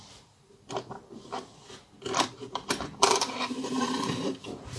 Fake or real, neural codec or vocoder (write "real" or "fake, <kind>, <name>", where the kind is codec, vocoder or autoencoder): fake, vocoder, BigVGAN v2